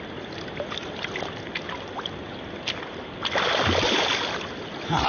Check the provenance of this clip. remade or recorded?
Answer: recorded